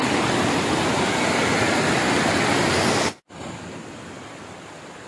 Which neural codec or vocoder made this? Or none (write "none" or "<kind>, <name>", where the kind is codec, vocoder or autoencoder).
none